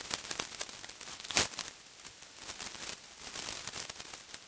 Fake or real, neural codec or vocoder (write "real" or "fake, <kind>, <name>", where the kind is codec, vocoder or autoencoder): real